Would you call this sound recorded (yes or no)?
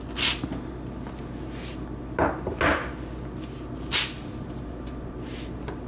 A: yes